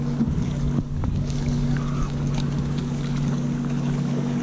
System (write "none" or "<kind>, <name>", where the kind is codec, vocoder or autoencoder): codec, DAC